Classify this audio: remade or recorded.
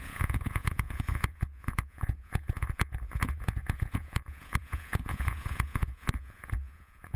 remade